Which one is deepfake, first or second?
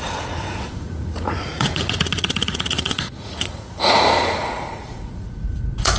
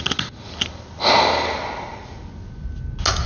first